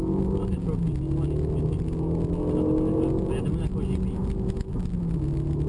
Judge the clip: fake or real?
real